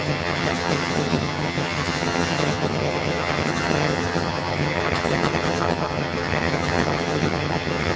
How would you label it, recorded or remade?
remade